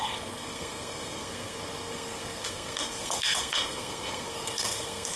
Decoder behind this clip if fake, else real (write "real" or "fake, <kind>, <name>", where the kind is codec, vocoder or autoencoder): fake, codec, SNAC